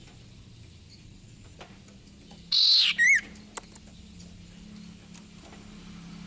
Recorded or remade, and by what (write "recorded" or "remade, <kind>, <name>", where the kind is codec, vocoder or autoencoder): recorded